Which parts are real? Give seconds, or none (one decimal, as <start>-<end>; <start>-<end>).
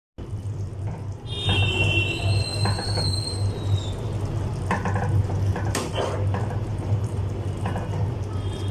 0.0-2.5; 3.5-6.7; 7.7-8.7